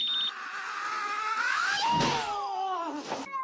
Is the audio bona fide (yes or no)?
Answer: yes